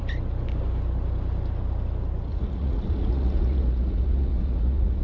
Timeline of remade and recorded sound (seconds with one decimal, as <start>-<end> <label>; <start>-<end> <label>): 0.0-2.3 recorded; 2.3-5.0 remade